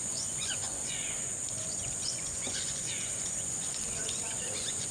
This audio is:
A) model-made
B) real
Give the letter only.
A